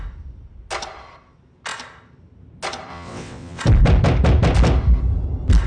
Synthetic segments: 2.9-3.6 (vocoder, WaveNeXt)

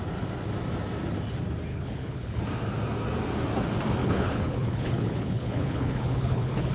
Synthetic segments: 1.7-2.4 (codec, HILCodec); 4.0-6.7